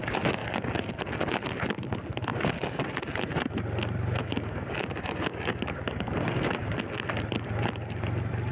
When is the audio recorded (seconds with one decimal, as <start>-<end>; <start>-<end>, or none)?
0.0-0.4; 0.9-2.3; 2.8-4.2; 6.7-8.5